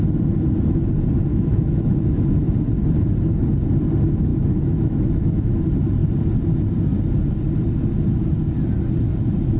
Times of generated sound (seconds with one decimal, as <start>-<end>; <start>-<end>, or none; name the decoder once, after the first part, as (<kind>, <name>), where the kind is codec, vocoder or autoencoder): 1.3-2.5 (autoencoder, DAC-VAE); 4.3-5.6

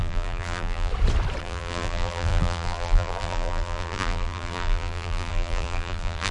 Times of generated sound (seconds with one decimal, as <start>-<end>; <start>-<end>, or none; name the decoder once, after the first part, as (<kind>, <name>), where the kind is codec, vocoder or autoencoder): 0.0-0.9 (vocoder, BigVGAN v2); 1.4-6.3

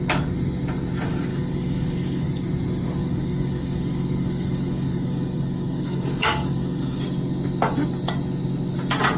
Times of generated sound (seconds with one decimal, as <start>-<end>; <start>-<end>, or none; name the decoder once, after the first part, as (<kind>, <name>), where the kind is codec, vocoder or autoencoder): 1.3-2.3 (codec, DAC); 3.0-7.0

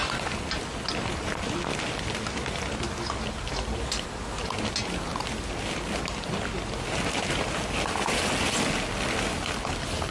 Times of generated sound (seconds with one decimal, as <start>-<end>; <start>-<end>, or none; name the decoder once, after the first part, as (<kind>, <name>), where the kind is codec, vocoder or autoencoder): none

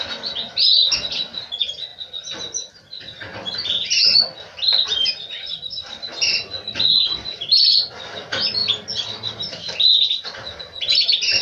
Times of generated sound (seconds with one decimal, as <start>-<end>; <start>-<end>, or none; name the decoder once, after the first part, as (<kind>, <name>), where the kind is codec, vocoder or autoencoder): none

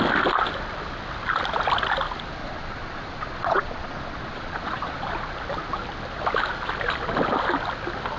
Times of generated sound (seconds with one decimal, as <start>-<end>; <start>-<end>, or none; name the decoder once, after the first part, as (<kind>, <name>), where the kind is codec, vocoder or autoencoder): 2.4-5.1 (vocoder, Vocos)

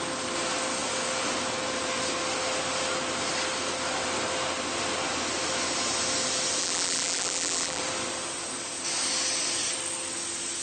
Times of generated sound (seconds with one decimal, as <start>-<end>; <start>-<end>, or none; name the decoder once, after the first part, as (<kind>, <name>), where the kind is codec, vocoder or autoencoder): 6.6-7.8 (vocoder, BigVGAN v2)

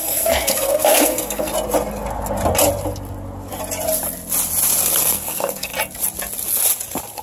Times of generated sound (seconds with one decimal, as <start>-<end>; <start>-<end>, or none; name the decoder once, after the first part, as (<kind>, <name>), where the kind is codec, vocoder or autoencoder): 0.0-1.5 (codec, SNAC); 5.0-5.7